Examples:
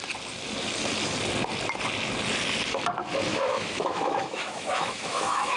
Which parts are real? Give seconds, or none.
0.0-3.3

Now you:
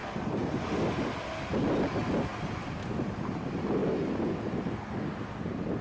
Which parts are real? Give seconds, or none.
0.0-5.8

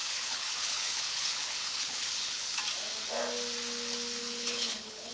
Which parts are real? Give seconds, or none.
2.6-4.2

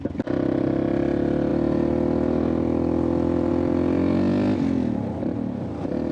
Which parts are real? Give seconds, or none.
0.0-6.1

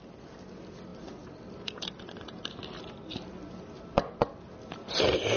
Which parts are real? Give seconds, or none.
0.0-5.4

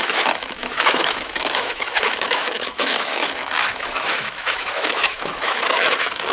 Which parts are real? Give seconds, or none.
none